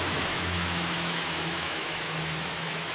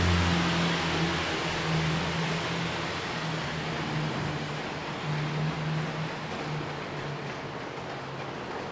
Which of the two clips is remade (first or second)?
first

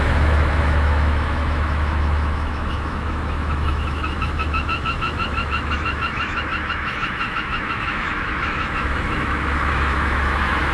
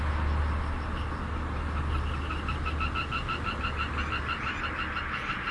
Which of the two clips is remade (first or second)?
first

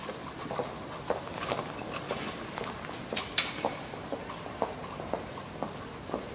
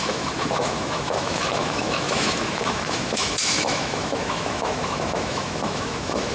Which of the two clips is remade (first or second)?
second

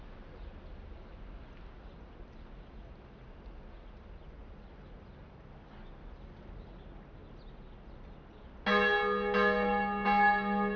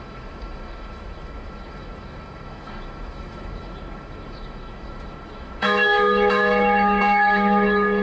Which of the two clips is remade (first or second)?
second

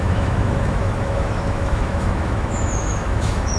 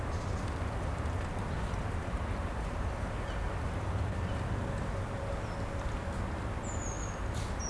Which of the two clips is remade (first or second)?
first